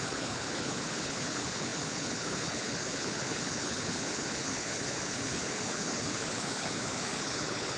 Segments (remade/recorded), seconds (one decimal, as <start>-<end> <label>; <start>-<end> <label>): 0.0-7.8 remade